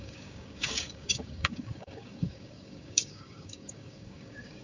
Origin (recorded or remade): remade